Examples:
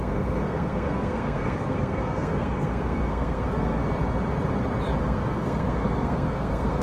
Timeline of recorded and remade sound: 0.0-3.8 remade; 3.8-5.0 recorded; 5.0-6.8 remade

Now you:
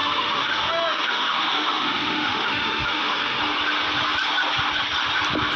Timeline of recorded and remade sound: 0.0-3.4 remade; 3.4-5.6 recorded

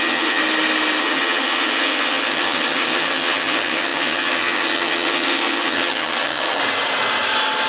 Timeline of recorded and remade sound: 0.0-0.4 remade; 0.4-1.0 recorded; 1.0-6.6 remade; 6.6-7.7 recorded

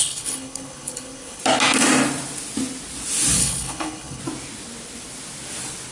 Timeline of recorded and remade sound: 0.0-1.4 remade; 1.4-3.4 recorded; 3.4-4.2 remade; 4.2-5.9 recorded